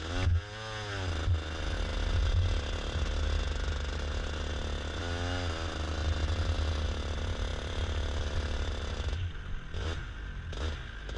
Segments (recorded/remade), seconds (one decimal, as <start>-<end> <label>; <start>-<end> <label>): 0.0-7.5 recorded; 7.5-8.9 remade; 8.9-11.2 recorded

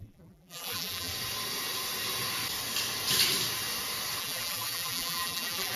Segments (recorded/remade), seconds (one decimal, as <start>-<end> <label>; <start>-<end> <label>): 0.0-1.1 remade; 1.1-4.2 recorded; 4.2-5.8 remade

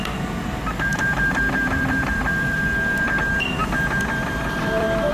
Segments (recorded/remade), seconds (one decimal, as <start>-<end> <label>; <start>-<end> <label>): 0.0-0.9 recorded; 0.9-2.6 remade; 2.6-3.6 recorded; 3.6-5.1 remade

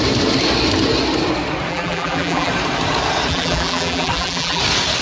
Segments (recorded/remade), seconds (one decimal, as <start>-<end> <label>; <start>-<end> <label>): 0.0-1.7 recorded; 1.7-2.5 remade; 2.5-3.3 recorded; 3.3-4.6 remade; 4.6-5.0 recorded